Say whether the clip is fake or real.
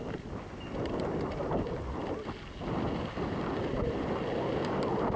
real